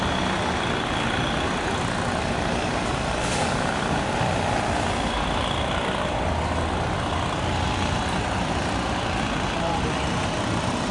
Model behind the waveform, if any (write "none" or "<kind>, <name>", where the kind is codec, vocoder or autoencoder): none